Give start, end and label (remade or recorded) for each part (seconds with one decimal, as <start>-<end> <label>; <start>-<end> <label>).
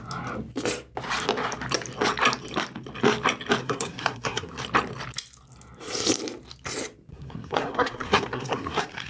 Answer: 0.0-3.6 recorded; 3.6-4.6 remade; 4.6-7.1 recorded; 7.1-9.1 remade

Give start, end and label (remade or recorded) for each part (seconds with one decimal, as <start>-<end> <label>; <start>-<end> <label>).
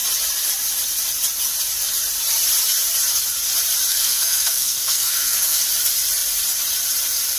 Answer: 0.0-3.9 recorded; 3.9-5.6 remade; 5.6-7.4 recorded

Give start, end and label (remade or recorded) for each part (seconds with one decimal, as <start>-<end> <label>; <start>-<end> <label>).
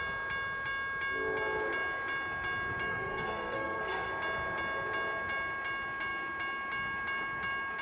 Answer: 0.0-2.9 recorded; 2.9-4.1 remade; 4.1-7.8 recorded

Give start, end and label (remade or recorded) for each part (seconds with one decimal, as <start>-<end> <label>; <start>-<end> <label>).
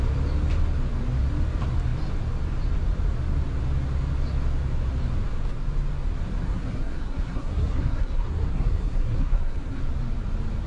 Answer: 0.0-6.4 recorded; 6.4-9.8 remade; 9.8-10.7 recorded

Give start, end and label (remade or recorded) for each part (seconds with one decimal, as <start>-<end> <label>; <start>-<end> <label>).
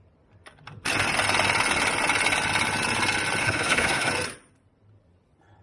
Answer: 0.0-3.4 recorded; 3.4-4.1 remade; 4.1-5.6 recorded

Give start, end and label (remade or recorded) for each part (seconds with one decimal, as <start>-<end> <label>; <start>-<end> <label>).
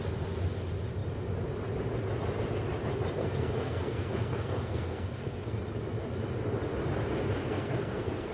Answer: 0.0-3.2 recorded; 3.2-5.6 remade; 5.6-7.4 recorded; 7.4-8.3 remade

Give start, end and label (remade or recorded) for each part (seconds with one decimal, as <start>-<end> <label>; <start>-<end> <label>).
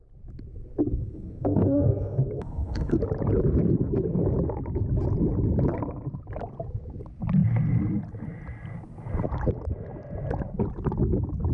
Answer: 0.0-0.9 recorded; 0.9-3.0 remade; 3.0-11.5 recorded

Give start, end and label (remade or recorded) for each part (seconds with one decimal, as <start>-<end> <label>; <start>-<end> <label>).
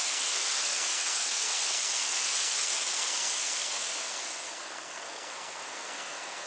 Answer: 0.0-6.5 remade